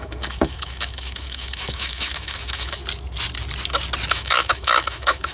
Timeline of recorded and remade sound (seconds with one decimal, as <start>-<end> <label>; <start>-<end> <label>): 0.0-2.8 remade; 2.8-4.1 recorded; 4.1-5.3 remade